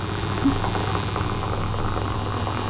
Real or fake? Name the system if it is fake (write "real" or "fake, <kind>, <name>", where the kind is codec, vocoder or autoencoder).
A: real